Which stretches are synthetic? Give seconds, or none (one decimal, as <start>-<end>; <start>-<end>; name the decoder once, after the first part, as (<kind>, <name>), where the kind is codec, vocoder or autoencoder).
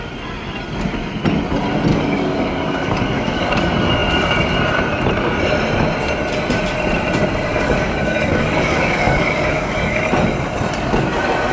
1.9-3.6 (codec, DAC); 7.5-10.0